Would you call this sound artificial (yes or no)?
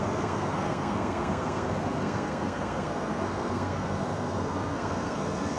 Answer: yes